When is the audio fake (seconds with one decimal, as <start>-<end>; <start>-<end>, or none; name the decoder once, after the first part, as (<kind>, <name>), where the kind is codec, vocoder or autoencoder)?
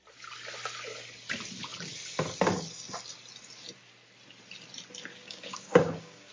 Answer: 5.1-6.3 (codec, DAC)